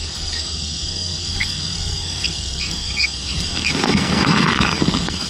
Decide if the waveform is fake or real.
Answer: fake